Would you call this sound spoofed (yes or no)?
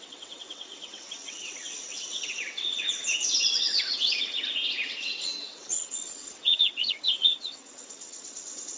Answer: yes